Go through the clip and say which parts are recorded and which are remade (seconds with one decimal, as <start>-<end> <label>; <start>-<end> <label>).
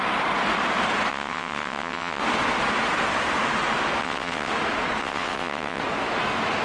0.0-1.1 recorded; 1.1-2.2 remade; 2.2-4.0 recorded; 4.0-4.5 remade; 4.5-5.0 recorded; 5.0-5.8 remade; 5.8-6.6 recorded